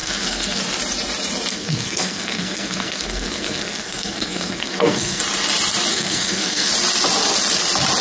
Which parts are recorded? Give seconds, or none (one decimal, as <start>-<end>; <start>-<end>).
0.6-1.5; 5.2-5.9; 6.7-8.0